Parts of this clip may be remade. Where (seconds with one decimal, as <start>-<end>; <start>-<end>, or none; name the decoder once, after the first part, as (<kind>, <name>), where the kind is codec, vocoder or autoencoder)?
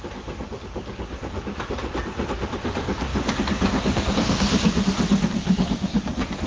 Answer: 0.0-1.8 (codec, DAC); 2.3-6.5